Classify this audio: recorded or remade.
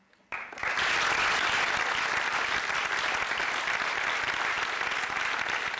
recorded